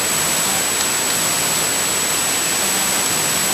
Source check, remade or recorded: recorded